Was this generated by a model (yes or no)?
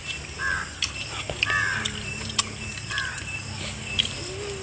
no